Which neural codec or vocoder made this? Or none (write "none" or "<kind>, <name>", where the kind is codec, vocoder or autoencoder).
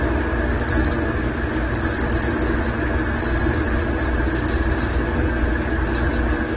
none